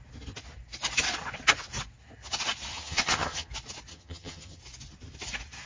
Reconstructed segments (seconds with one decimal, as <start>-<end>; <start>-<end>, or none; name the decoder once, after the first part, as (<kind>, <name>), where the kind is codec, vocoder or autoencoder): 2.7-3.5 (vocoder, HiFi-GAN); 3.9-4.6